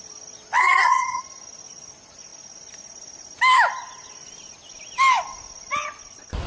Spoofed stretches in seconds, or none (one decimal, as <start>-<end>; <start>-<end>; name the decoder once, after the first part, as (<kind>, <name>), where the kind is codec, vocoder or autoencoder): 0.6-1.2 (codec, SNAC)